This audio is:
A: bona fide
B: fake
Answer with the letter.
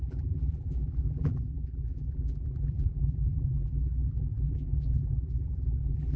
B